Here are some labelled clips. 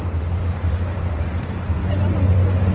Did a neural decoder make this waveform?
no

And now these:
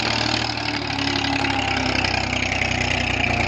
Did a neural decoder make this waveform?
no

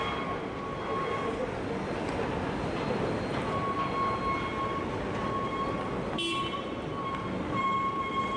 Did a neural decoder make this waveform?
no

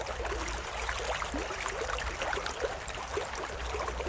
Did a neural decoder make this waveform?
yes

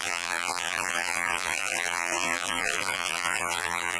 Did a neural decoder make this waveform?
yes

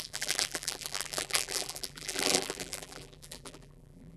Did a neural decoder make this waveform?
yes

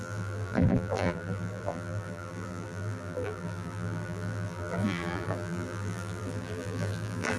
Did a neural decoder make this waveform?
yes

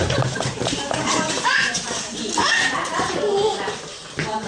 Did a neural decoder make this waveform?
yes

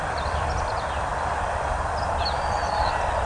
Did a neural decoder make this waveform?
yes